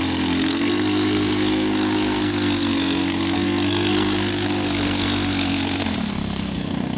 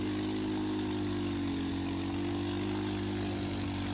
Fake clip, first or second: first